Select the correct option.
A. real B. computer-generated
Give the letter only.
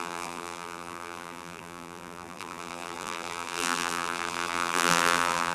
B